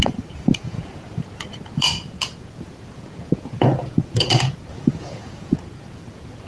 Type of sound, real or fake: fake